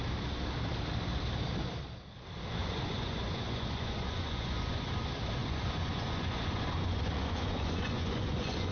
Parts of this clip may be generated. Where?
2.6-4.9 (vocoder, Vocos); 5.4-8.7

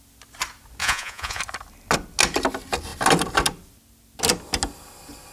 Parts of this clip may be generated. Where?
0.8-1.4 (vocoder, Vocos)

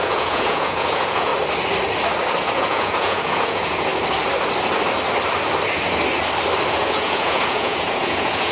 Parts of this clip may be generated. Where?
0.0-1.3 (vocoder, Vocos); 2.4-3.9; 6.7-8.5

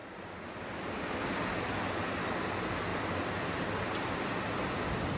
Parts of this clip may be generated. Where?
none

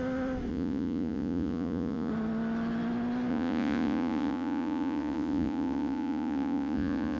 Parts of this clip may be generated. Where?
0.5-2.1 (vocoder, Vocos); 3.3-7.2

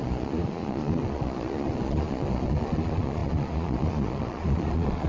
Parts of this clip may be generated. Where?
0.0-5.1 (vocoder, Vocos)